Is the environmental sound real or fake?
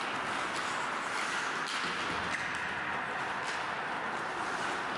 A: real